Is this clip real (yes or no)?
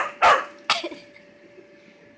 yes